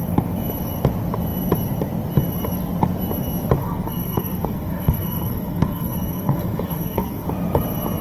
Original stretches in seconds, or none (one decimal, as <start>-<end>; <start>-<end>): 0.0-3.6; 7.3-8.0